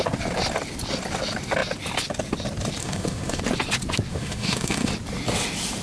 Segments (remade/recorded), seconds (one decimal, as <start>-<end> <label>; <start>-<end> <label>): 0.0-2.8 recorded; 2.8-3.4 remade; 3.4-4.1 recorded; 4.1-4.9 remade; 4.9-5.8 recorded